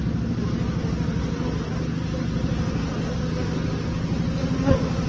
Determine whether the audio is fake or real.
real